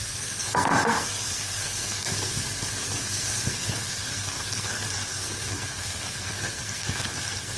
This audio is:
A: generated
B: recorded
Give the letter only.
A